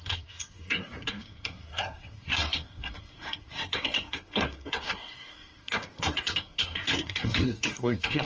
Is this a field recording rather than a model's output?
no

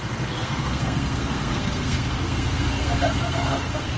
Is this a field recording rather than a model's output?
no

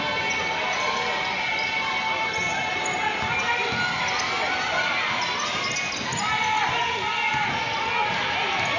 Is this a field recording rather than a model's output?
yes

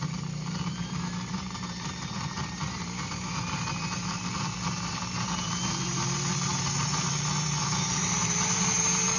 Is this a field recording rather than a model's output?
no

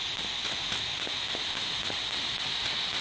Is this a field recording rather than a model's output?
yes